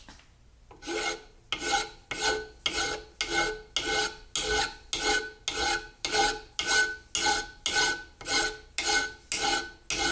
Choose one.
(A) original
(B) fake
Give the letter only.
A